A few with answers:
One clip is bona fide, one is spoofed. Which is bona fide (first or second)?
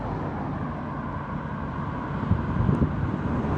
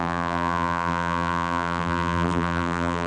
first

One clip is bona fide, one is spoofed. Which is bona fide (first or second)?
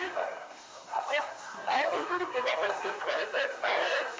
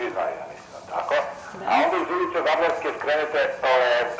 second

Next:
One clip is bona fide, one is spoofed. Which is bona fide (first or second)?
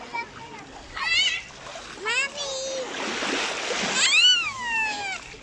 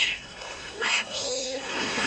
first